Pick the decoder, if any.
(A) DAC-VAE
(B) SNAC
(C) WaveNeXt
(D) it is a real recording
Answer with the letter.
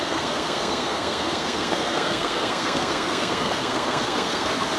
B